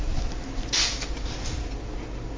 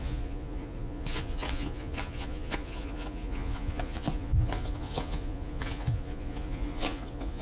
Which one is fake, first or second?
second